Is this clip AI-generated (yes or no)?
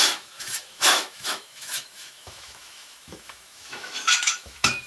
yes